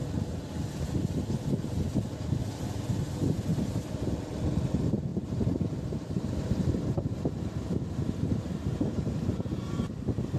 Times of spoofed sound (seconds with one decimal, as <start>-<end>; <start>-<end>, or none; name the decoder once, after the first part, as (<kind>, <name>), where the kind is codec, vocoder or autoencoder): 3.5-4.2 (vocoder, BigVGAN v2); 5.1-9.9